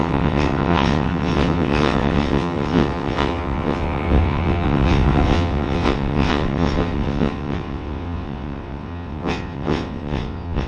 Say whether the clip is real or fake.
fake